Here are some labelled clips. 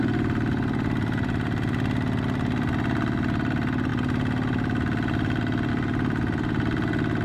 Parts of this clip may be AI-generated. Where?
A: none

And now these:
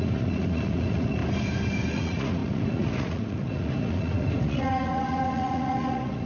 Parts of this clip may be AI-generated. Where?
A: 0.0-1.2 (vocoder, Vocos); 1.9-6.3

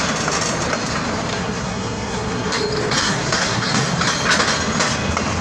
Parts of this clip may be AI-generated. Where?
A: 1.3-2.6 (codec, SNAC); 3.0-3.8

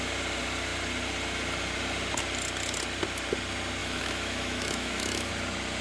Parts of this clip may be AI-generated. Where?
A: 3.8-5.3 (autoencoder, DAC-VAE)

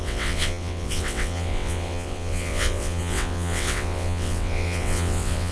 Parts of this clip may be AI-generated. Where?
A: 0.0-5.5 (vocoder, WaveNeXt)